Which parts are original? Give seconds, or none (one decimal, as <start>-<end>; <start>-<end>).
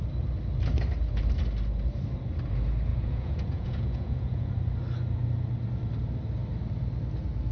0.0-2.9; 4.5-7.5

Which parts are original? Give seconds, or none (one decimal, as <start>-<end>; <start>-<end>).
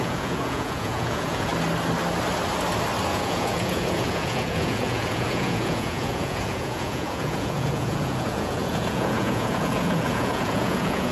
1.5-3.1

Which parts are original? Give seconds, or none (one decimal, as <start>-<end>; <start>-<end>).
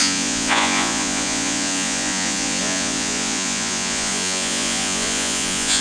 none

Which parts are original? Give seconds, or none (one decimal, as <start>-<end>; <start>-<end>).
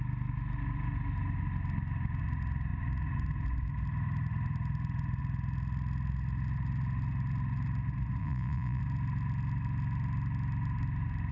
0.0-8.2; 8.8-11.3